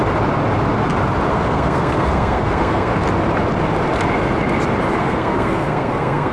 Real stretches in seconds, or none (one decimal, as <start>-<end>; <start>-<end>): 0.0-1.3; 2.9-5.0